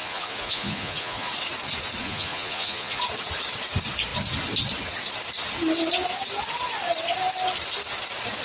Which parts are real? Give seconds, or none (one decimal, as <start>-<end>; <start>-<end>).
1.3-2.0; 3.0-8.4